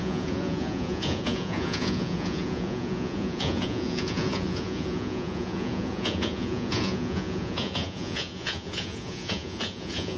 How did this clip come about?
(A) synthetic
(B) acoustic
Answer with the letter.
A